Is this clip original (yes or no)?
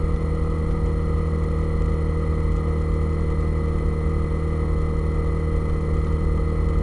yes